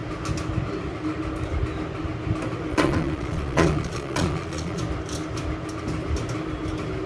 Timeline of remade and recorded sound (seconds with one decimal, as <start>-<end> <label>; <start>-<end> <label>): 0.0-2.7 recorded; 2.7-4.8 remade; 4.8-7.1 recorded